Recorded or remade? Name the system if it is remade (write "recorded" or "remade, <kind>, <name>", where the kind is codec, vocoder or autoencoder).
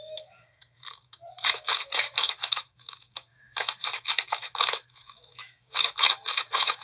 remade, autoencoder, DAC-VAE